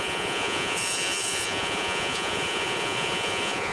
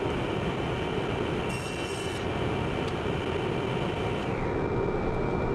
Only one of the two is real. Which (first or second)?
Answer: second